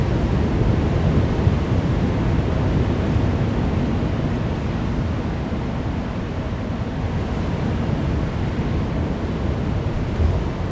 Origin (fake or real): real